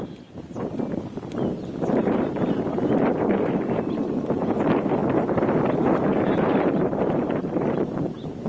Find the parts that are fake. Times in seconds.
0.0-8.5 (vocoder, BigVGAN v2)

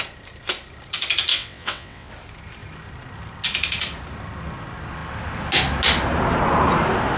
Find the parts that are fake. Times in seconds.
1.3-2.1 (vocoder, WaveNeXt)

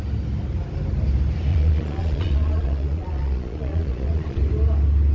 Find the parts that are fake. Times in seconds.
1.5-4.4 (vocoder, Vocos)

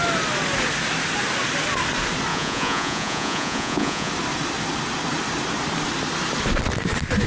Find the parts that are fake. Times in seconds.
2.3-4.1 (vocoder, Vocos)